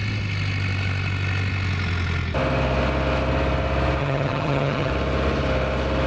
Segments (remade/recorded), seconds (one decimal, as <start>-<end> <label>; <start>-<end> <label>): 0.0-4.0 recorded; 4.0-4.9 remade; 4.9-6.1 recorded